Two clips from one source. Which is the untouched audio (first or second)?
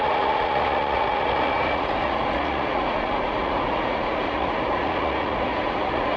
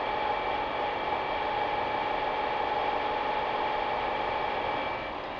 second